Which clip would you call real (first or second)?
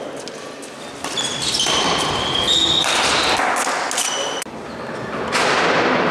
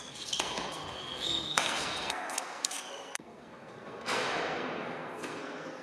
first